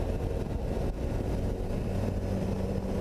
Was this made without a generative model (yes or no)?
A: yes